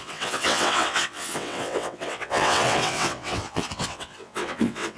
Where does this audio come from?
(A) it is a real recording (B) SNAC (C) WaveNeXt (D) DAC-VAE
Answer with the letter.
C